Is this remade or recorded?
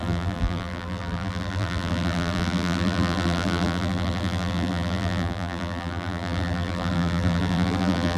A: remade